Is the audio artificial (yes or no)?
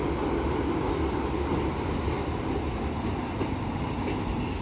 no